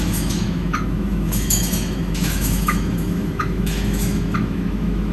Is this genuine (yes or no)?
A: no